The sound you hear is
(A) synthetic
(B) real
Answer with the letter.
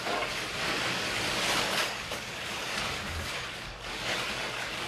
A